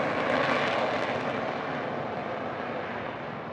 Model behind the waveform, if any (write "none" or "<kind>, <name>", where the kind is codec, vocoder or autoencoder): none